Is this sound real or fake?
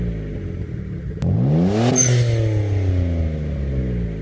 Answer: real